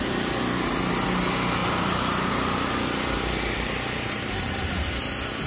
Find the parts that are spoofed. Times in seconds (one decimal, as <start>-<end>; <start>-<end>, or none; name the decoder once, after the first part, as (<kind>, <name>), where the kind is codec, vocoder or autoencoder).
1.6-4.9 (vocoder, BigVGAN v2)